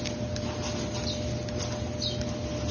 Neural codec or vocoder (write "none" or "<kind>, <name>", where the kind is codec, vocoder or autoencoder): none